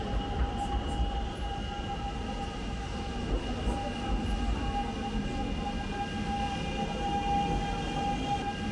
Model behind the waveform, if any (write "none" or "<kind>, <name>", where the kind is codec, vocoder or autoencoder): none